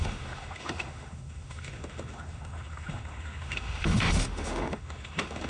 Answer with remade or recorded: remade